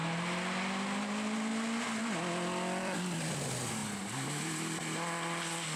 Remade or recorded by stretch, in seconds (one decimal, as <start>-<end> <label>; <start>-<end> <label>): 0.0-1.0 recorded; 1.0-1.5 remade; 1.5-2.8 recorded; 2.8-3.8 remade; 3.8-4.5 recorded; 4.5-5.8 remade